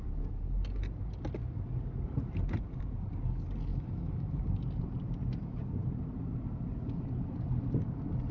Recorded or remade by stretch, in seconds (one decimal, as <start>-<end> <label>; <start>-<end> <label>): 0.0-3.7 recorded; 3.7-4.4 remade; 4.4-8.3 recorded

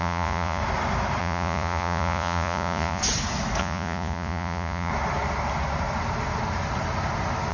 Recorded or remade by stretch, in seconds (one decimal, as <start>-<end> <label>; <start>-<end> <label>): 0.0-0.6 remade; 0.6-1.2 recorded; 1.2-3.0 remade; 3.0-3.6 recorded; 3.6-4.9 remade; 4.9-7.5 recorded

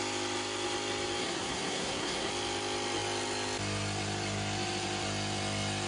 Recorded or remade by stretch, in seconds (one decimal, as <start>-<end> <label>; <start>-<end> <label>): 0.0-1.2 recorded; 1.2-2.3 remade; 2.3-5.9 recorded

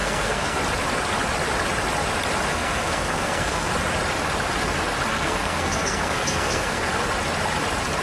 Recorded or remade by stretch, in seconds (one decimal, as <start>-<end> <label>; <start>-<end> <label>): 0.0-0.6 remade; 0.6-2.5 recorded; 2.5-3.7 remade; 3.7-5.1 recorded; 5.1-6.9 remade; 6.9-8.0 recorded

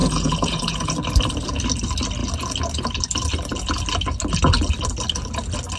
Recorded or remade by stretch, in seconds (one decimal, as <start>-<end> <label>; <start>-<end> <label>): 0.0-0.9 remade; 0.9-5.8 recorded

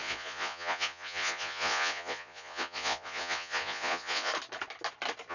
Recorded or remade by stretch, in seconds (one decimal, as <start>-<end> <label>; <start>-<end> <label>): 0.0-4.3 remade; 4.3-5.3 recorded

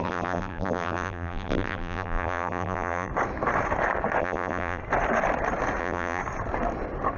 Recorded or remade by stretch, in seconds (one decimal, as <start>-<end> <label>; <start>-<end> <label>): 0.0-3.1 remade; 3.1-4.2 recorded; 4.2-4.8 remade; 4.8-5.8 recorded; 5.8-6.2 remade; 6.2-7.2 recorded

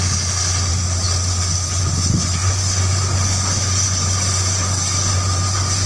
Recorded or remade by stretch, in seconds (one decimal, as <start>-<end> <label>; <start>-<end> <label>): 0.0-2.4 recorded; 2.4-5.9 remade